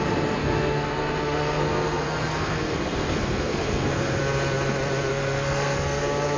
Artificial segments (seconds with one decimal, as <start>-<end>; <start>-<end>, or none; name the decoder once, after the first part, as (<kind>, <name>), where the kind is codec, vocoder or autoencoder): 0.4-4.2 (codec, SNAC); 5.1-6.0